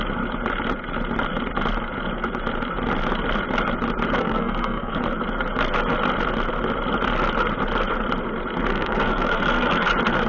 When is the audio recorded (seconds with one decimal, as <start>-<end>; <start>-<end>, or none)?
0.0-4.2; 5.0-8.7; 9.9-10.3